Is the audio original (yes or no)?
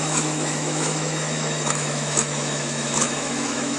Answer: no